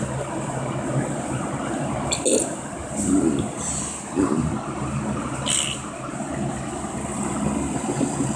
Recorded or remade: recorded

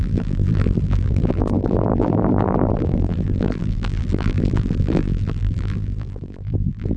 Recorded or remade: remade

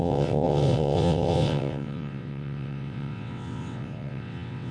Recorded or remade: remade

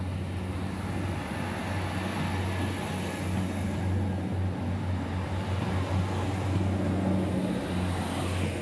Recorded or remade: recorded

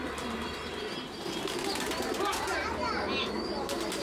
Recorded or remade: recorded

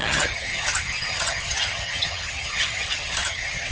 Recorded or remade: remade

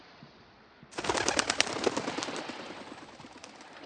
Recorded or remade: recorded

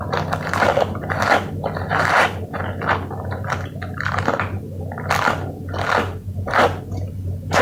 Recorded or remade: recorded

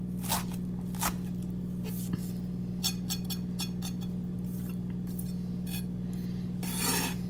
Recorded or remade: recorded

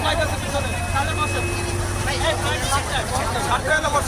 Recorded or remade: recorded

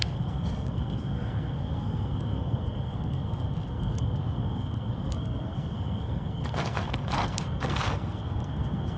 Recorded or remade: remade